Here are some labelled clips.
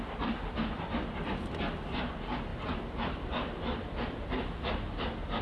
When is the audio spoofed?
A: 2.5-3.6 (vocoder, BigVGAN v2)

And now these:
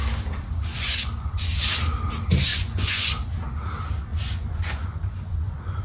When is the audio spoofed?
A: 0.7-1.6 (vocoder, Vocos); 2.5-3.1; 4.1-5.8